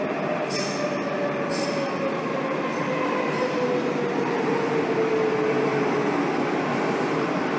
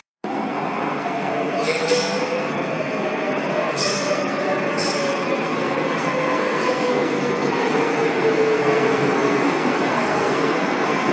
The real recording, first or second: first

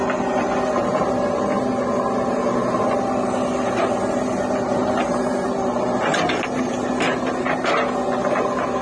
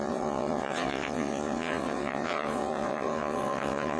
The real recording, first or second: first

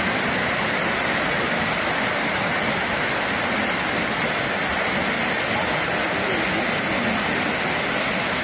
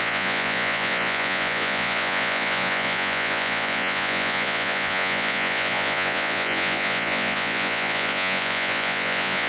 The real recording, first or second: first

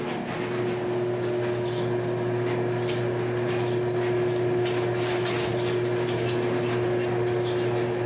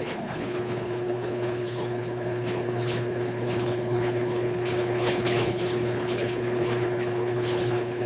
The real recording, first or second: first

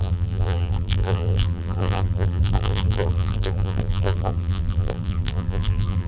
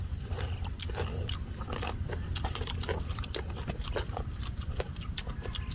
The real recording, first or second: second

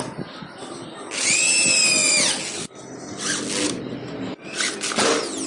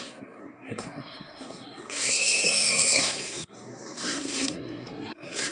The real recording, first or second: first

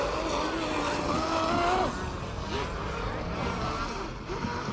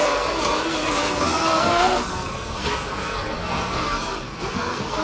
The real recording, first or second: first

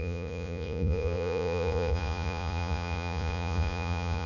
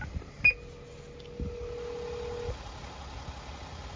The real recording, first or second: second